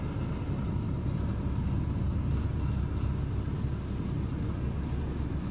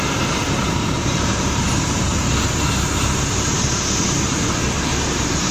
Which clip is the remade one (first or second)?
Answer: second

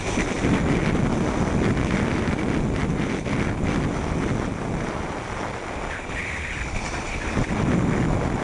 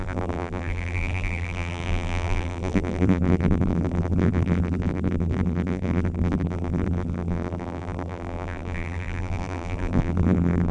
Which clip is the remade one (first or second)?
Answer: second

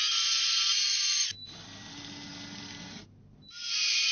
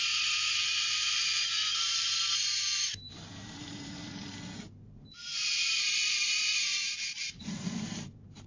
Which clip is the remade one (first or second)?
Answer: second